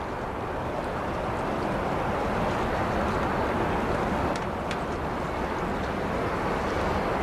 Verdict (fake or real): real